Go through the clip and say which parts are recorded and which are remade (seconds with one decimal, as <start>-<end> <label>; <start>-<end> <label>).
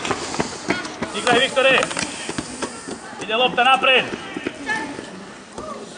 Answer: 0.0-6.0 recorded